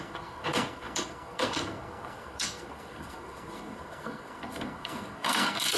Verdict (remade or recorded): remade